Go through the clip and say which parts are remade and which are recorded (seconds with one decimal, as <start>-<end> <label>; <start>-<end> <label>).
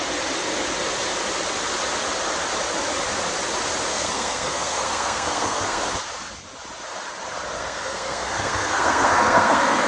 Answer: 0.0-3.9 recorded; 3.9-5.8 remade; 5.8-7.6 recorded; 7.6-9.9 remade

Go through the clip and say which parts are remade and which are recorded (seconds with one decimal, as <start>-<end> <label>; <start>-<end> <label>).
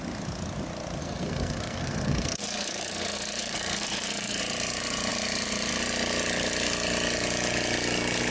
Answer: 0.0-1.0 recorded; 1.0-4.4 remade; 4.4-8.3 recorded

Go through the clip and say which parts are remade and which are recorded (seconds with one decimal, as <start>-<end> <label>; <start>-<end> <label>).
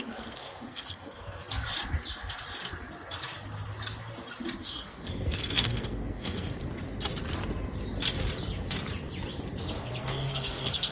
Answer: 0.0-1.4 remade; 1.4-4.6 recorded; 4.6-6.7 remade; 6.7-10.0 recorded; 10.0-10.9 remade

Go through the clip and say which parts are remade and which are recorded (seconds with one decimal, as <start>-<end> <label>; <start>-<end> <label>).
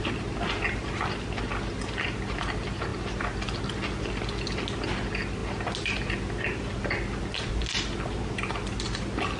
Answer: 0.0-9.4 recorded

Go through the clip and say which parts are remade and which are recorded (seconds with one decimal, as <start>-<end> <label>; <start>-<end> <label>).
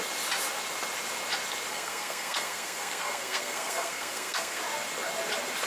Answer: 0.0-1.7 recorded; 1.7-4.6 remade; 4.6-5.7 recorded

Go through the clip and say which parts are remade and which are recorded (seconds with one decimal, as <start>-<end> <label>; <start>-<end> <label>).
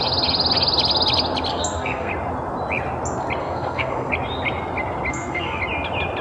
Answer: 0.0-1.5 recorded; 1.5-2.1 remade; 2.1-3.4 recorded; 3.4-4.1 remade; 4.1-5.1 recorded; 5.1-5.6 remade; 5.6-6.2 recorded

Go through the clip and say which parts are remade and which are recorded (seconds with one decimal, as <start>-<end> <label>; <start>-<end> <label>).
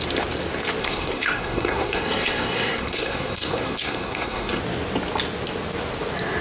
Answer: 0.0-0.8 recorded; 0.8-4.6 remade; 4.6-6.4 recorded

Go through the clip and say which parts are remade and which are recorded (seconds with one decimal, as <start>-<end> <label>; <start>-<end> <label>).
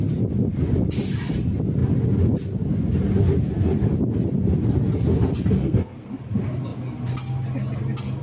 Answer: 0.0-5.6 recorded; 5.6-6.2 remade; 6.2-8.2 recorded